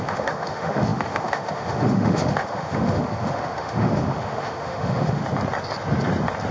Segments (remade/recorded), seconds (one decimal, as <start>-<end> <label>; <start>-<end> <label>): 0.0-5.2 remade; 5.2-6.5 recorded